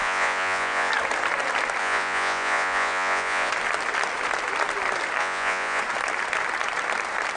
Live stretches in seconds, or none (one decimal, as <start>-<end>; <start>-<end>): 0.9-1.8; 3.5-5.2; 5.8-7.4

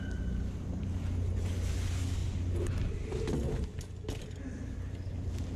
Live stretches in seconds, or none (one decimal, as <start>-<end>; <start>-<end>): 0.0-5.6

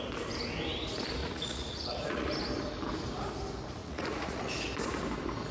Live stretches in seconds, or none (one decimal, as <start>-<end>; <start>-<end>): 0.0-1.2; 2.3-3.8; 4.5-5.5

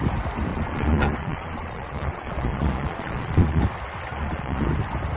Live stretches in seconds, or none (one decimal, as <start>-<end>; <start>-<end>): 0.0-0.5; 3.6-4.1; 4.7-5.2

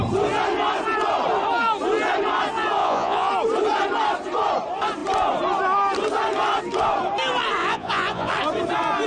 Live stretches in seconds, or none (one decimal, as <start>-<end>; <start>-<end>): 0.0-2.8; 3.3-7.6; 8.3-9.1

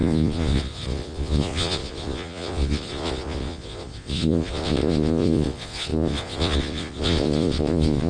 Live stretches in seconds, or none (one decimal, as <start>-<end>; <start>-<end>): none

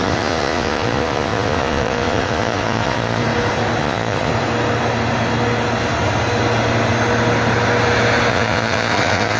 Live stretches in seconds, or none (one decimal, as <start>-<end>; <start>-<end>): 3.2-3.8; 4.3-8.3